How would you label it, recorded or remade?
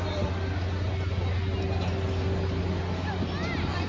recorded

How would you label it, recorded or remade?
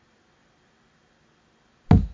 recorded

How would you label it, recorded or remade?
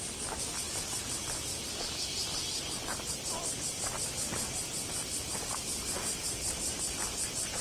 recorded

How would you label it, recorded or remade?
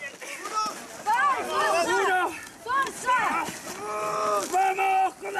recorded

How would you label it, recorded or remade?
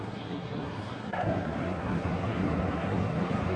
remade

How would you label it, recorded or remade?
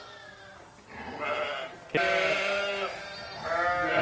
recorded